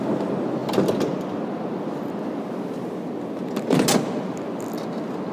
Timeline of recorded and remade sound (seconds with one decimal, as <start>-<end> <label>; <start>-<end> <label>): 0.0-5.3 recorded